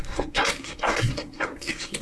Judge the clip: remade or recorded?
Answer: remade